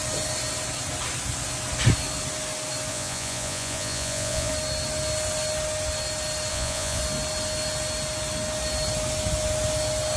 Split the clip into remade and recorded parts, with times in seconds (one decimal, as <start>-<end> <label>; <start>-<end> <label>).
0.0-2.9 recorded; 2.9-4.5 remade; 4.5-6.5 recorded; 6.5-7.0 remade; 7.0-10.2 recorded